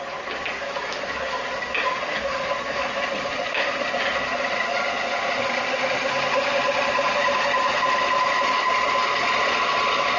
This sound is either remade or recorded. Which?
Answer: recorded